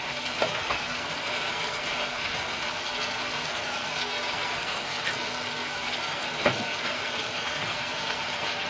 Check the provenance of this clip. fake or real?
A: fake